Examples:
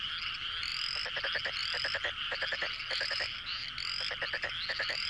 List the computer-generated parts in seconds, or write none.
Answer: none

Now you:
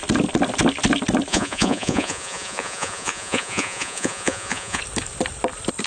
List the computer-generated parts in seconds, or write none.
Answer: 1.3-4.8 (vocoder, Vocos)

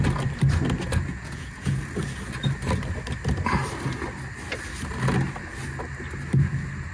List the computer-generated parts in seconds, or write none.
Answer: 1.1-1.8 (vocoder, Vocos)

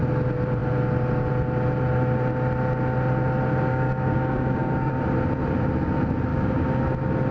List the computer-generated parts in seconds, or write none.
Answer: 3.7-4.9 (codec, DAC); 6.3-6.8

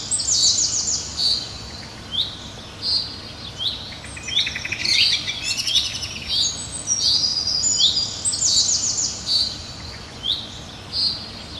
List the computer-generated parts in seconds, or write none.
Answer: 1.1-1.8 (vocoder, Vocos); 4.8-6.0; 9.6-10.6